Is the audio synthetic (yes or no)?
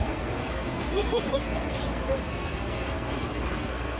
yes